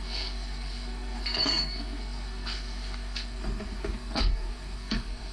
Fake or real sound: fake